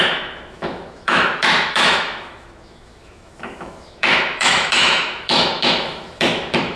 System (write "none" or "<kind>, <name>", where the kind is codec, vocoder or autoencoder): autoencoder, DAC-VAE